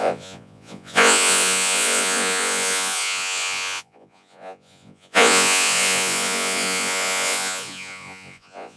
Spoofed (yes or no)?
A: yes